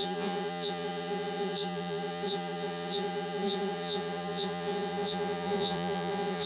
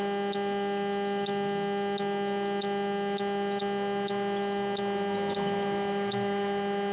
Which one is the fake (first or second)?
first